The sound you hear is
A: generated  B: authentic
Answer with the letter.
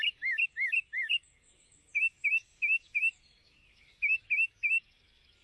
A